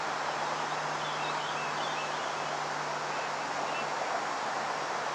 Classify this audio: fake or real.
real